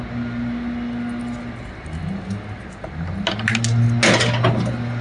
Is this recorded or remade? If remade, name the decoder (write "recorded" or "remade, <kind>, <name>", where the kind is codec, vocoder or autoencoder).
recorded